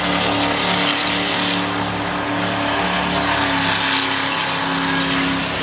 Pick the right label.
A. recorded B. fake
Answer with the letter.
A